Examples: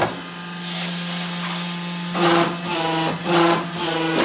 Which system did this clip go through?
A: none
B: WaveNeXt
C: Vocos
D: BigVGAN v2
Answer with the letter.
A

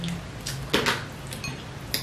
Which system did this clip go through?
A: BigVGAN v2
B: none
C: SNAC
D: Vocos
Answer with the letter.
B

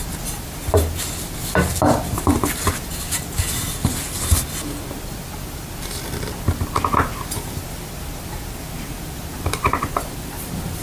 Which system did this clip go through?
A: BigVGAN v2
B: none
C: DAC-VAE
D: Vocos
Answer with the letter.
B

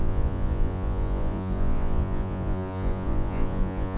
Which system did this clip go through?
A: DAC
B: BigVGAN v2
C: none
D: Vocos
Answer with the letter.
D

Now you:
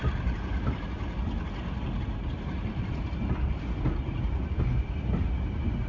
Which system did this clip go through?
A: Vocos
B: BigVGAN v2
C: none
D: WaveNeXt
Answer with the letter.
C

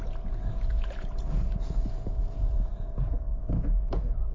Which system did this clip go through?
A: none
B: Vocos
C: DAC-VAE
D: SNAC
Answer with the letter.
B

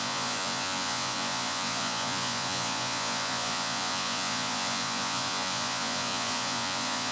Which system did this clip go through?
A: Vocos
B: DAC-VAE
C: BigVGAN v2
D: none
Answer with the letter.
A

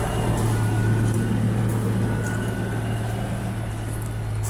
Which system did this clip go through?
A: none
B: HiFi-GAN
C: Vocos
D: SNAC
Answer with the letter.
A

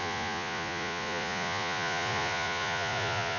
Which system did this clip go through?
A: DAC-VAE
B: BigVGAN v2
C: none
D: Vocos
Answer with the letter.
D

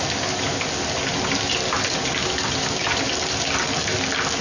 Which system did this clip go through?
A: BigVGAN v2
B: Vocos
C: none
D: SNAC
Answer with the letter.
C